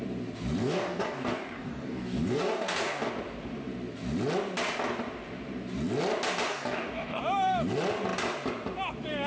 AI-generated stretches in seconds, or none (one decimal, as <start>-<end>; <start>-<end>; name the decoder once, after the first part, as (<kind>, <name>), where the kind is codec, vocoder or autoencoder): 0.6-3.1 (codec, DAC); 6.5-7.2